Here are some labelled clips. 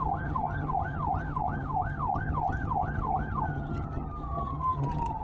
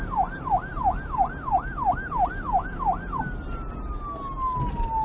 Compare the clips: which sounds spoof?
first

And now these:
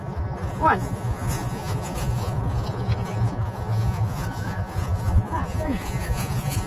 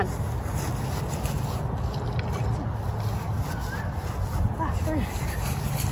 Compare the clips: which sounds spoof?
first